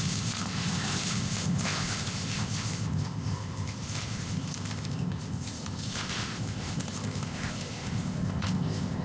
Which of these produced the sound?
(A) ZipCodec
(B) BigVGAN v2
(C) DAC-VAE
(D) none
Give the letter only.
A